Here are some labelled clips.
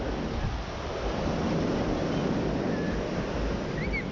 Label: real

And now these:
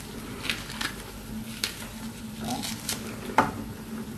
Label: real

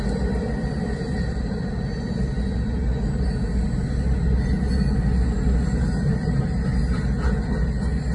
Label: real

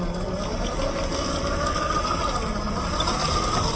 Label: real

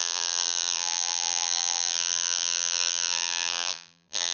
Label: fake